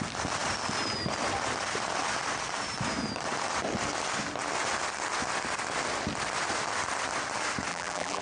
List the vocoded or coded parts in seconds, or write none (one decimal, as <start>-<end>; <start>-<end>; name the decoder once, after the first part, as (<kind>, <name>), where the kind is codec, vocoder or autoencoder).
7.7-8.2 (vocoder, BigVGAN v2)